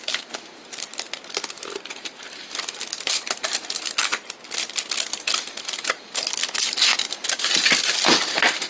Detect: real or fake real